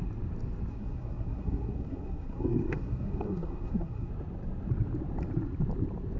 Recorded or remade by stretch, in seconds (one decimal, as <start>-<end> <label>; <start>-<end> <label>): 0.0-0.7 recorded; 0.7-4.1 remade; 4.1-6.2 recorded